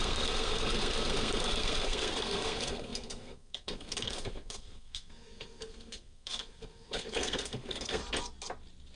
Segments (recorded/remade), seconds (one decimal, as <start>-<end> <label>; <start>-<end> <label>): 0.0-8.0 remade; 8.0-9.0 recorded